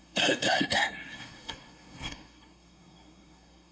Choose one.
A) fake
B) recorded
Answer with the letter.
A